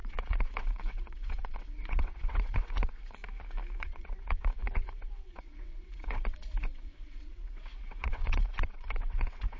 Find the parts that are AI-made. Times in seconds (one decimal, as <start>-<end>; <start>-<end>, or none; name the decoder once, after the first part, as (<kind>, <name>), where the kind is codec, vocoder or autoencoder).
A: 0.0-3.2 (vocoder, WaveNeXt); 3.8-9.6